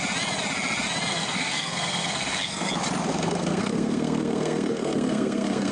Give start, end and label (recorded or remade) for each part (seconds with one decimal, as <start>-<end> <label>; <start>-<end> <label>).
0.0-1.1 recorded; 1.1-2.7 remade; 2.7-3.1 recorded; 3.1-5.7 remade